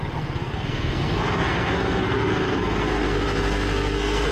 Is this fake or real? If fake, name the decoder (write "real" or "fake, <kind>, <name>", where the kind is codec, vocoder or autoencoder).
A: fake, codec, SNAC